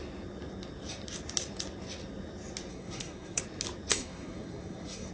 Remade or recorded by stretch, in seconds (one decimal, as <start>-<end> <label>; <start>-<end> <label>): 0.0-2.7 recorded; 2.7-3.4 remade; 3.4-3.9 recorded; 3.9-5.1 remade